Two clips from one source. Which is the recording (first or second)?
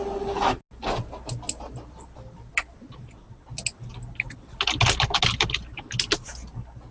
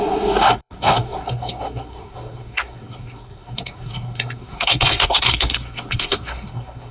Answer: first